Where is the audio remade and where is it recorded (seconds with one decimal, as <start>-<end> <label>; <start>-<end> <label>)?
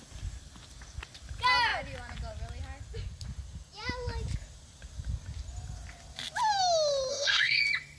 0.0-7.1 recorded; 7.1-7.6 remade; 7.6-8.0 recorded